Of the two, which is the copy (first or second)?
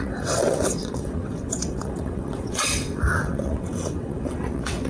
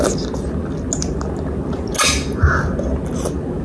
first